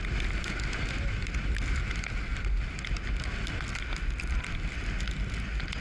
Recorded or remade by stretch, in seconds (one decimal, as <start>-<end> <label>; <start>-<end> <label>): 0.0-5.8 recorded